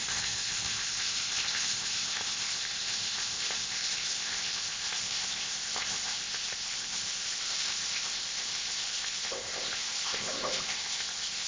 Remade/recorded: remade